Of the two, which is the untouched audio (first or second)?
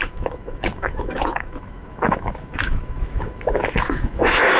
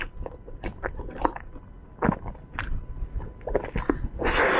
second